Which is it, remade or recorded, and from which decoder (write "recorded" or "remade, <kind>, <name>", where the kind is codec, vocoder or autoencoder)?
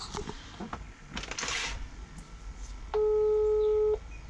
recorded